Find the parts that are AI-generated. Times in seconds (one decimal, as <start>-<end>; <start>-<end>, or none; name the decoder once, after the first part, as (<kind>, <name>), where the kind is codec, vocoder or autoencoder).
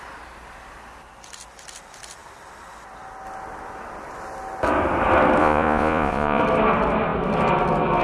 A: 5.4-6.4 (vocoder, Vocos)